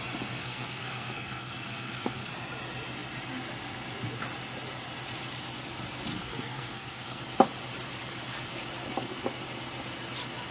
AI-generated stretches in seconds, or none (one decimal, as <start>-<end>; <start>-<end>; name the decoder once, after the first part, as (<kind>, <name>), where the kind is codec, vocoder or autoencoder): 0.4-2.3 (codec, SNAC); 6.1-7.2

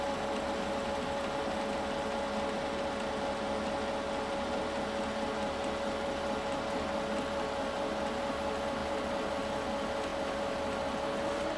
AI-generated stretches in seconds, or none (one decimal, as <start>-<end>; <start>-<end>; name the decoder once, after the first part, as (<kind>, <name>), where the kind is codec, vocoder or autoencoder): none

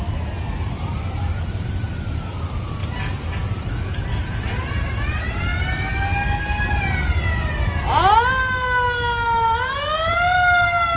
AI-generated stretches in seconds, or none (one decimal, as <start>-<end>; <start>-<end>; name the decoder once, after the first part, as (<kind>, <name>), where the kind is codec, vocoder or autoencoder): none

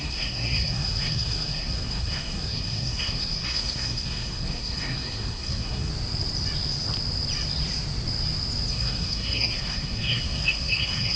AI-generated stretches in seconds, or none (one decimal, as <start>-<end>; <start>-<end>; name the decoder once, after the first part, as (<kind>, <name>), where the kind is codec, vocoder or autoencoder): 0.0-5.9 (codec, SNAC); 8.7-11.2

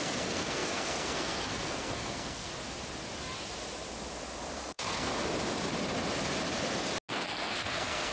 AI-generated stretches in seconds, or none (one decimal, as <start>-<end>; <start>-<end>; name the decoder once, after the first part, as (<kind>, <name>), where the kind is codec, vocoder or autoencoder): 0.0-2.5 (codec, SNAC); 4.5-5.1; 7.1-8.1

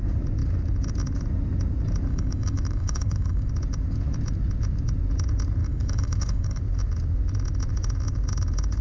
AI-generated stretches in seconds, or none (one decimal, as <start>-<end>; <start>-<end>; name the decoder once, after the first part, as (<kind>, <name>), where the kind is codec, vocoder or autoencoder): 2.1-3.5 (codec, DAC); 5.6-6.6

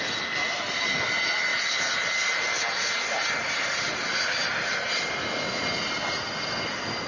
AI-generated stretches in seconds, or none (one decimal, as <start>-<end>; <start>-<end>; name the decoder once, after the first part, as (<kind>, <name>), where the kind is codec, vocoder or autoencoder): none